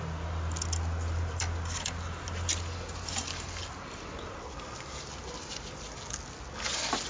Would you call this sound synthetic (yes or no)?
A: no